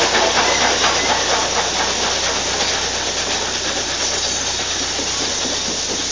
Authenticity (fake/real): real